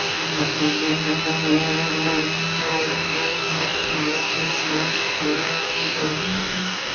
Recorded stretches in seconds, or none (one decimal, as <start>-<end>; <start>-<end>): 0.9-2.6